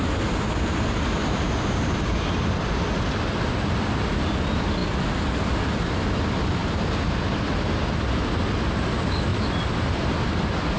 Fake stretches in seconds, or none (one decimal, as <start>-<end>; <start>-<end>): 6.6-7.2; 9.3-10.1